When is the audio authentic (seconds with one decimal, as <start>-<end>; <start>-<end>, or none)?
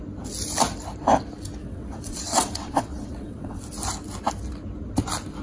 0.0-1.6; 3.6-5.4